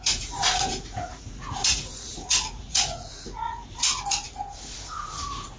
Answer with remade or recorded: remade